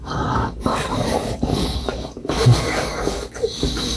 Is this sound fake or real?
fake